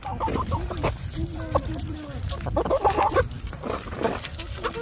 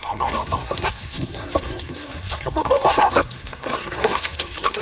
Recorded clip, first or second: first